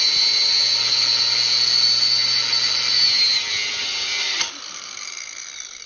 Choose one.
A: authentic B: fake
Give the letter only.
A